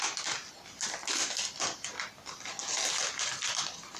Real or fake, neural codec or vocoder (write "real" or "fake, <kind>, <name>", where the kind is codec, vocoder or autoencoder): real